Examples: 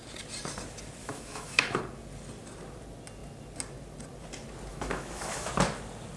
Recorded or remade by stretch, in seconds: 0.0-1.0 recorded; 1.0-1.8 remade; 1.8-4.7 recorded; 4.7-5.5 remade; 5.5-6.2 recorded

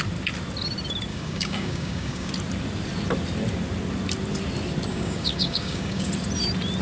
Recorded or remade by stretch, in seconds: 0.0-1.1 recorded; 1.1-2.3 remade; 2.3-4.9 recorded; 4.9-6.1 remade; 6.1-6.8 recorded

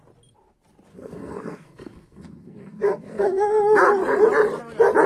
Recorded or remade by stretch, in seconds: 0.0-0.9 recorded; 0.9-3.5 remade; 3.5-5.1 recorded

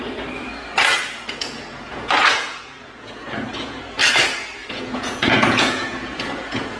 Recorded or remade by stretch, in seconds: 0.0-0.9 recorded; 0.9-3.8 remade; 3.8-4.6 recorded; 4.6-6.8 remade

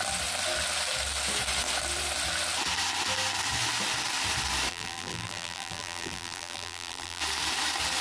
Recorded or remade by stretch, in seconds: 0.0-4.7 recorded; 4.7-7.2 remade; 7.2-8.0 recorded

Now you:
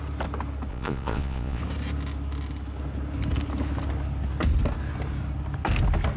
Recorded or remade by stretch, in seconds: 0.0-0.7 recorded; 0.7-1.6 remade; 1.6-6.2 recorded